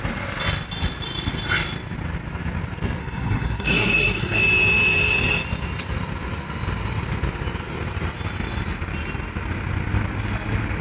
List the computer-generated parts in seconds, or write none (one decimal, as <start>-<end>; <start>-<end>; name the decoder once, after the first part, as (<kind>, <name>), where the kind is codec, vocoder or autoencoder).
3.0-4.4 (codec, SNAC)